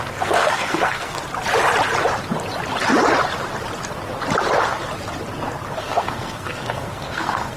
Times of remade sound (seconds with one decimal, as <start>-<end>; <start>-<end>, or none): 0.0-1.2; 5.8-7.6